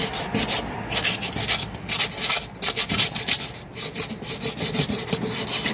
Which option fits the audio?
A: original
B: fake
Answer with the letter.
A